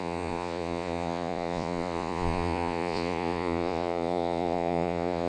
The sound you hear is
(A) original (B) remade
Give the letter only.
B